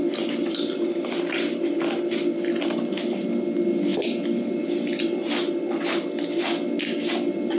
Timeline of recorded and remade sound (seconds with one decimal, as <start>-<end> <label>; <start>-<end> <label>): 0.0-7.6 recorded

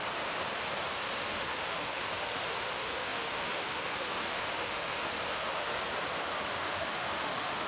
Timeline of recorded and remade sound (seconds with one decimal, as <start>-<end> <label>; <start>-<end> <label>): 0.0-1.3 recorded; 1.3-5.7 remade; 5.7-6.5 recorded; 6.5-7.7 remade

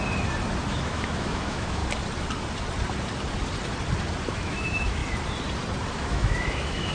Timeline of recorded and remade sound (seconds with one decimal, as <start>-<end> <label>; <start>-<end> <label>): 0.0-0.7 recorded; 0.7-1.8 remade; 1.8-4.3 recorded; 4.3-5.0 remade; 5.0-6.0 recorded; 6.0-6.9 remade

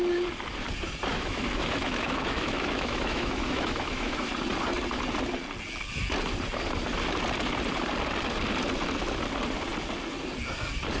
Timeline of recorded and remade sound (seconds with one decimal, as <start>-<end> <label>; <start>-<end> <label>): 0.0-1.1 recorded; 1.1-4.3 remade; 4.3-11.0 recorded